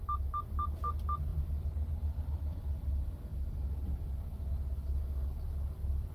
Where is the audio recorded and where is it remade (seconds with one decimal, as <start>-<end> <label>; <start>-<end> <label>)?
0.0-1.3 recorded; 1.3-2.6 remade; 2.6-6.1 recorded